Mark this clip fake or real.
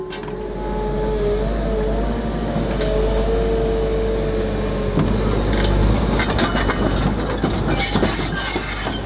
real